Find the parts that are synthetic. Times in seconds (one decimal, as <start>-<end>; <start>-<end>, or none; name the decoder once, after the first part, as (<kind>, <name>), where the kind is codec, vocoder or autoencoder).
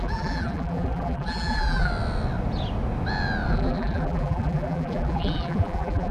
0.0-1.9 (vocoder, BigVGAN v2); 3.5-6.1